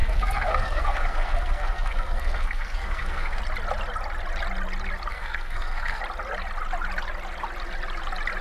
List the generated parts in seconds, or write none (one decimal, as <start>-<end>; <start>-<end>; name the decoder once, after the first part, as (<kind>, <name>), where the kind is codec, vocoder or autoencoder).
0.0-3.4 (codec, SNAC); 5.1-6.0